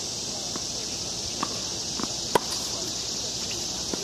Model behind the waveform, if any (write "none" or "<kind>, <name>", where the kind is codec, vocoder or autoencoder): none